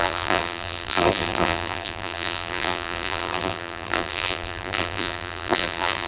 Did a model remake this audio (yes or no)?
yes